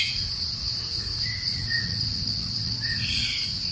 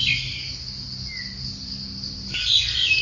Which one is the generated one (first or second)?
first